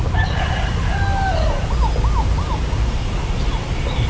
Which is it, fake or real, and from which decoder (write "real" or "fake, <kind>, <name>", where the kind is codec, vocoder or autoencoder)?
real